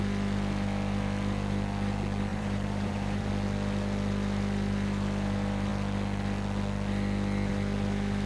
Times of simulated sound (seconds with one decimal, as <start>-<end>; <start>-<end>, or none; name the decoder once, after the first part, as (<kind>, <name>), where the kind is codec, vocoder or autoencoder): 2.3-3.3 (vocoder, BigVGAN v2)

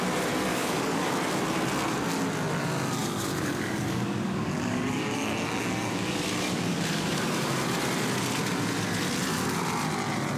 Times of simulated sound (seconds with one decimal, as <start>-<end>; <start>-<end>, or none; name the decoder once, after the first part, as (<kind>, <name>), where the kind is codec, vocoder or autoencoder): 0.5-1.1 (codec, DAC); 3.0-7.6